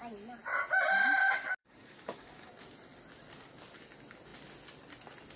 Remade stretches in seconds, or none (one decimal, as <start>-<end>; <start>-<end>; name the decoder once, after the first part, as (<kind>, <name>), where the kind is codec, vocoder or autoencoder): 1.6-2.5 (codec, DAC)